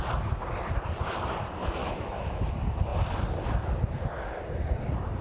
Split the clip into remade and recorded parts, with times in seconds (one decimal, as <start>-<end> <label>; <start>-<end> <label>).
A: 0.0-1.8 recorded; 1.8-2.5 remade; 2.5-5.2 recorded